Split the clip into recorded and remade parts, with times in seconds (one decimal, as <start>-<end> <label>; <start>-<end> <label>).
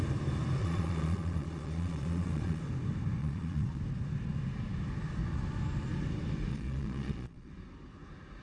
0.0-0.6 recorded; 0.6-2.6 remade; 2.6-3.2 recorded; 3.2-3.8 remade; 3.8-6.5 recorded; 6.5-7.5 remade; 7.5-8.4 recorded